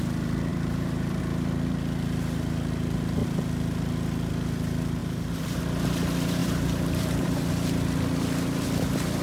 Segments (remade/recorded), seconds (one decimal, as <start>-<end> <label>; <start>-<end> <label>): 0.0-0.5 recorded; 0.5-1.2 remade; 1.2-5.0 recorded; 5.0-5.6 remade; 5.6-6.4 recorded; 6.4-7.5 remade; 7.5-9.2 recorded